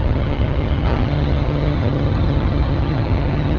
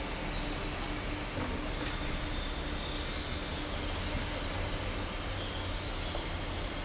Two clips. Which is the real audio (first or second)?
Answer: second